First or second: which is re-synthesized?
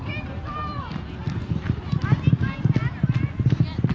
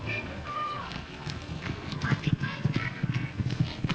second